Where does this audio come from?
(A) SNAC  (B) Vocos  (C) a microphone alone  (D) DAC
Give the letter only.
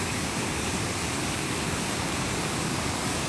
D